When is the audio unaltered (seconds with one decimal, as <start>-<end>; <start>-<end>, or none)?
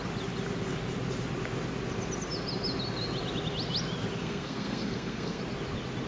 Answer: 0.0-4.2; 5.4-6.1